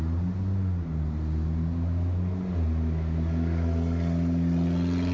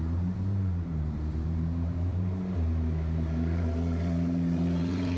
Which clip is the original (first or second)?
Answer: first